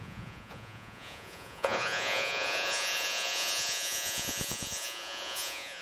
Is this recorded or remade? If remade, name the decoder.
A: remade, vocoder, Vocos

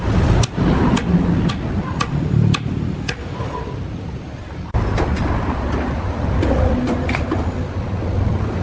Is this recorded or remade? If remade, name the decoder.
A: recorded